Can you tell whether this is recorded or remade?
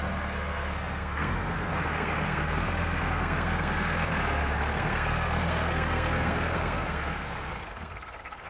remade